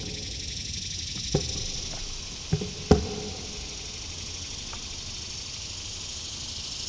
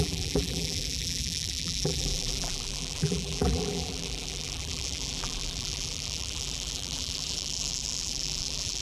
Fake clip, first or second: second